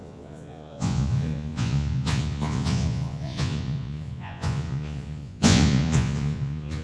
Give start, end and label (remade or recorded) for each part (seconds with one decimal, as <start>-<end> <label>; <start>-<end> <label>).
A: 0.0-6.8 remade